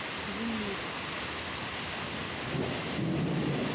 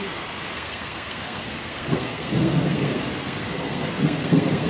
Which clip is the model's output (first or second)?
second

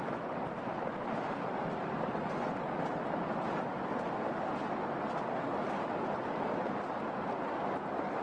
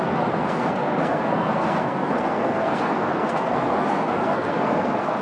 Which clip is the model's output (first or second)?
second